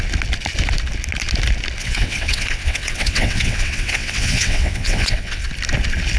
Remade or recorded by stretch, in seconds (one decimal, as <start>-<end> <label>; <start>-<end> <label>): 0.0-1.8 recorded; 1.8-5.5 remade; 5.5-6.2 recorded